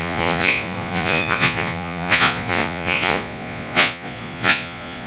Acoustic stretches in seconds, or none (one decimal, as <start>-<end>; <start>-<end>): none